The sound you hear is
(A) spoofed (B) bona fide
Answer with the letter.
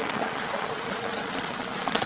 A